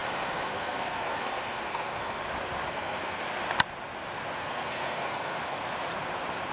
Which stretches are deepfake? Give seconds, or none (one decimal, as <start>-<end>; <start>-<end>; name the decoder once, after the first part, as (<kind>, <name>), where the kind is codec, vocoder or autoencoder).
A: 0.0-2.2 (codec, SNAC); 2.7-3.2; 4.4-5.6